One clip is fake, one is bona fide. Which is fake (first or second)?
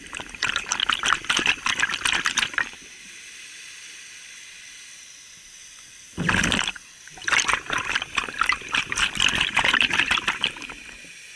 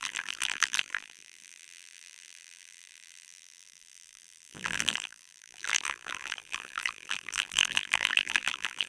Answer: second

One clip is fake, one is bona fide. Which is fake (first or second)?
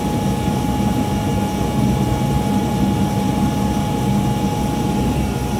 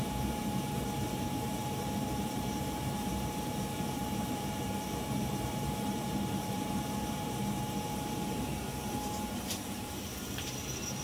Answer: second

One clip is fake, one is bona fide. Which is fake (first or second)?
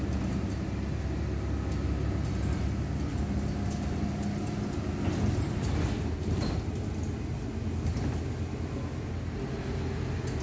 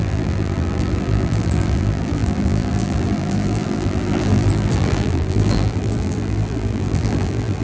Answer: second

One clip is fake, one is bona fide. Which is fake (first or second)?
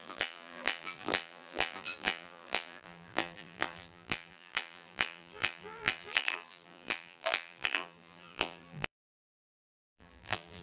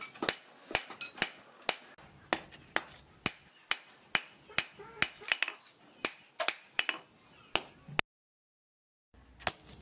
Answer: first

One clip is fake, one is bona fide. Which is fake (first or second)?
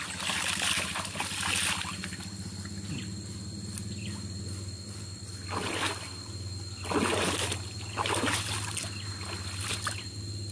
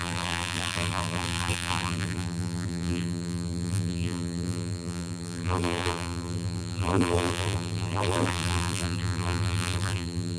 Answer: second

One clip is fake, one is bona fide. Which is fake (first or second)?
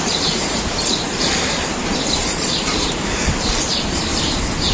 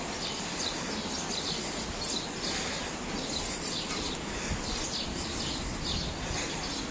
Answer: first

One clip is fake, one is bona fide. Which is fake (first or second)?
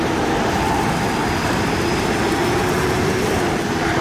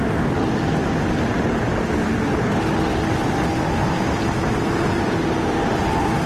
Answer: first